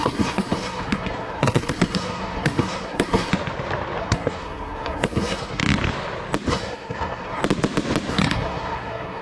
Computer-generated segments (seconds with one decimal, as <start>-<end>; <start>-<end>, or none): 0.0-3.3; 4.0-5.6; 6.5-7.4; 8.1-9.2